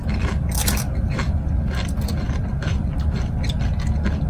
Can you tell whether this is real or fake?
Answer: real